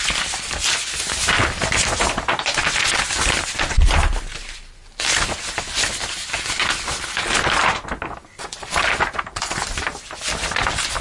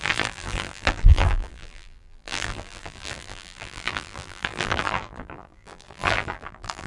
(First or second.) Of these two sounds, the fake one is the second